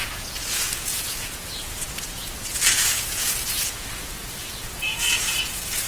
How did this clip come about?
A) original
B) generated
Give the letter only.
B